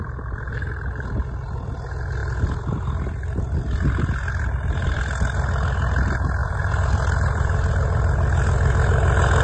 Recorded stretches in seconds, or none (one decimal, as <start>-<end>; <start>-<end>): 0.0-6.4; 7.7-9.4